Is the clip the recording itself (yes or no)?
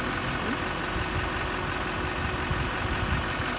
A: yes